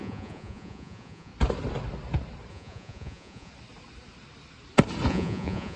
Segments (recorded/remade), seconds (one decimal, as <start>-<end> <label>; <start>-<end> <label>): 0.0-1.3 remade; 1.3-2.5 recorded; 2.5-3.5 remade; 3.5-5.1 recorded; 5.1-5.8 remade